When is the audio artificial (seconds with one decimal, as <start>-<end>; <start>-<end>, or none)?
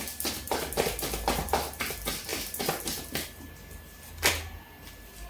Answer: none